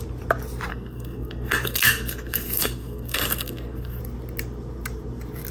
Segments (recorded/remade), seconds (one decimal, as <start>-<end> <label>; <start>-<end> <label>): 0.0-0.7 recorded; 0.7-4.0 remade; 4.0-5.5 recorded